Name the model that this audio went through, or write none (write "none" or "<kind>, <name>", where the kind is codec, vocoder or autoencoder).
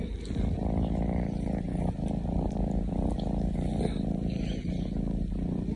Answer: none